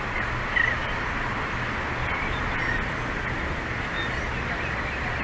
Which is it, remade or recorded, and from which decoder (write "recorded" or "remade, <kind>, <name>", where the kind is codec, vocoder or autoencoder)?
recorded